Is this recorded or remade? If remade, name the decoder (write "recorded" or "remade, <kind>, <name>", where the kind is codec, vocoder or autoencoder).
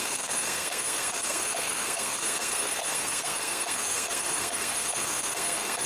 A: remade, codec, SNAC